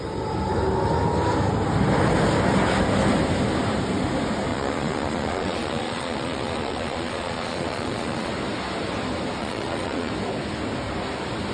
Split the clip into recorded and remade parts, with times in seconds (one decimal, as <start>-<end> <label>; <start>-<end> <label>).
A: 0.0-4.5 recorded; 4.5-8.3 remade; 8.3-9.4 recorded; 9.4-10.1 remade; 10.1-11.5 recorded